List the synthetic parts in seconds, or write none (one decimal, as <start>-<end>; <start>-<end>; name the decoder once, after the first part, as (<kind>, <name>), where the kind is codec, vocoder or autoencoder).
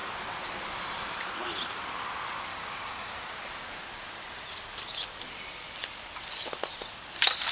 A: 2.5-3.1 (codec, DAC)